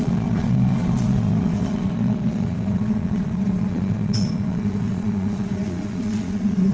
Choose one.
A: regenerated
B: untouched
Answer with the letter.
A